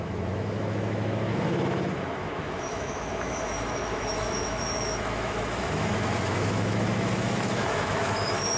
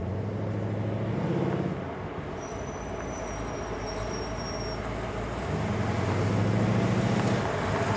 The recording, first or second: second